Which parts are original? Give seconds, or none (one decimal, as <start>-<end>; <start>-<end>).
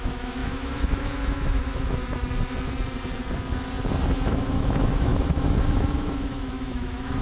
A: 2.0-4.3